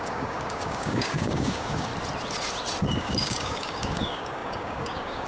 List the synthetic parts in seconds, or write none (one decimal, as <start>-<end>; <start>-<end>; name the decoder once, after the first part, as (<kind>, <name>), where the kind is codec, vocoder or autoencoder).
0.0-1.9 (codec, DAC); 2.8-5.3